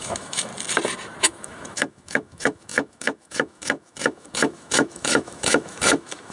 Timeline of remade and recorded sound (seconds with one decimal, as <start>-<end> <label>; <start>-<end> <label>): 0.0-0.5 remade; 0.5-1.2 recorded; 1.2-6.3 remade